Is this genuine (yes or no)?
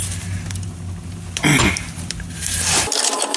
yes